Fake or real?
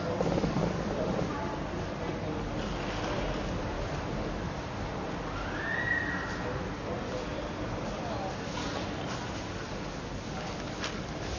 real